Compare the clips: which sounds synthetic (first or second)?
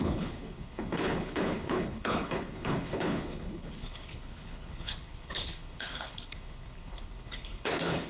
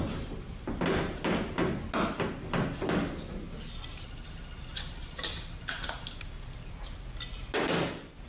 first